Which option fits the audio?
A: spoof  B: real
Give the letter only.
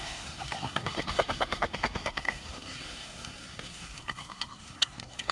A